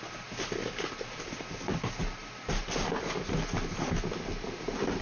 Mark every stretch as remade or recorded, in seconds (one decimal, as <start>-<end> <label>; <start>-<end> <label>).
0.0-5.0 recorded